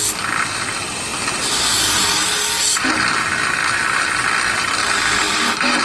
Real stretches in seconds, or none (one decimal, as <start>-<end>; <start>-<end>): 0.0-1.1; 2.1-3.6; 4.2-4.8